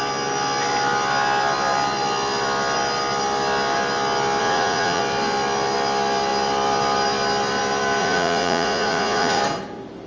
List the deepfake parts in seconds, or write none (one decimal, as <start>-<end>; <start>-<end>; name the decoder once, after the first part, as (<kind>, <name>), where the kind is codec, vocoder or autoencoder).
4.4-5.0 (vocoder, Vocos); 8.0-9.4